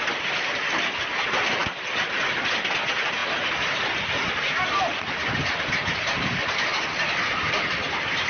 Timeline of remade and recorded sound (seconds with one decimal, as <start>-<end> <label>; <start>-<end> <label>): 0.0-8.3 recorded